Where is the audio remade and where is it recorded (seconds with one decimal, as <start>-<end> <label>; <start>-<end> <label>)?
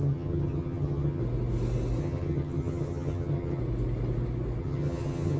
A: 0.0-1.2 remade; 1.2-2.0 recorded; 2.0-3.6 remade; 3.6-4.6 recorded; 4.6-5.4 remade